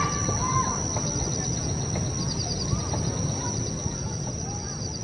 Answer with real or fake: real